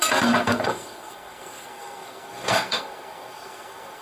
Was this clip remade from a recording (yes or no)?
yes